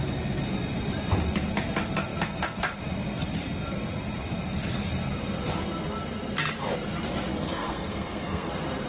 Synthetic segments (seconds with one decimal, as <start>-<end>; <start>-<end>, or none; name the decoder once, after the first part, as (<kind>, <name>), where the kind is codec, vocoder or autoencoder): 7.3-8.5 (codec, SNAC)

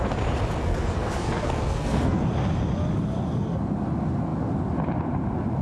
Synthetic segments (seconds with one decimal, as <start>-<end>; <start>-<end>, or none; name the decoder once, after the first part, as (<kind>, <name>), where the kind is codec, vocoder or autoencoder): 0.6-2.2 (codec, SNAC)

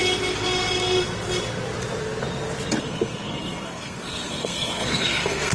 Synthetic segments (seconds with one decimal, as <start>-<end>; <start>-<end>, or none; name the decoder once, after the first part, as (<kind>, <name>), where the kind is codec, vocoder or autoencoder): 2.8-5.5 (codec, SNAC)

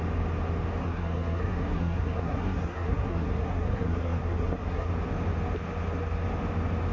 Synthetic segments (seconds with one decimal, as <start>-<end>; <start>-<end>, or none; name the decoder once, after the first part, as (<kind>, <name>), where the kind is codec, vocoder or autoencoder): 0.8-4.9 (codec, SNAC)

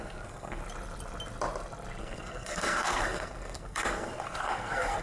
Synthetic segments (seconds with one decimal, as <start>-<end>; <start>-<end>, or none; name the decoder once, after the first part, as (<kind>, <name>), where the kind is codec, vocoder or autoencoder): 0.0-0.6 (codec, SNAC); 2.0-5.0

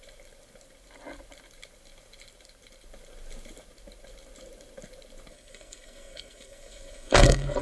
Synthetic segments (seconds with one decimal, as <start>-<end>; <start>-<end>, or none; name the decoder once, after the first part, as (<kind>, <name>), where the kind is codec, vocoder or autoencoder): 5.3-7.6 (codec, SNAC)